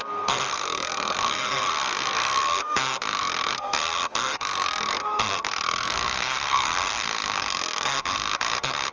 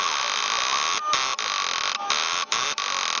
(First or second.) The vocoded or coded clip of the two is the first